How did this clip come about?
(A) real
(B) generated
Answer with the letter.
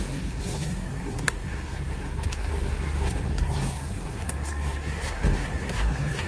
B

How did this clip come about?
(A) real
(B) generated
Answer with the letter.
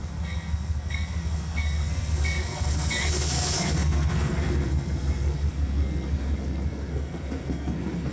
B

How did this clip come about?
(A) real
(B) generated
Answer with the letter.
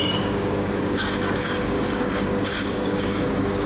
B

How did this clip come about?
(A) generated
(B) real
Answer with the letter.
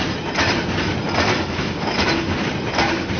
B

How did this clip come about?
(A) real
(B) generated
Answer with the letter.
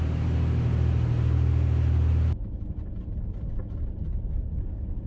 A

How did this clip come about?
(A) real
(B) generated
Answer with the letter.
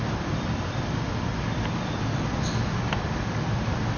A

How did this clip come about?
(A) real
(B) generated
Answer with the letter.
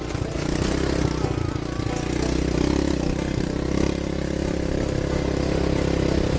A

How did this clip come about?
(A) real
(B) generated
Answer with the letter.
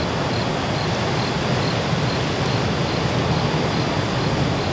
A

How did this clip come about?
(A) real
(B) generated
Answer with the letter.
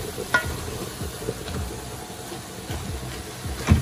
A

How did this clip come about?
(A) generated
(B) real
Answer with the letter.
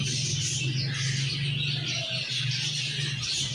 B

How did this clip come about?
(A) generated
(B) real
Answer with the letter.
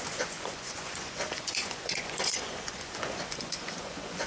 A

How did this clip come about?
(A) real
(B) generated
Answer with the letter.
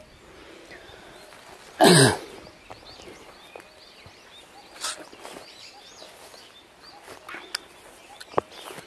A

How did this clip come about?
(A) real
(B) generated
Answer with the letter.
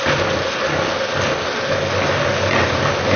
A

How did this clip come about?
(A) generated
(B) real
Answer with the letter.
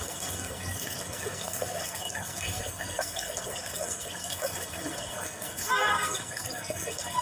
A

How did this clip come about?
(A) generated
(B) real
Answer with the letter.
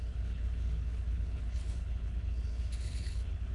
A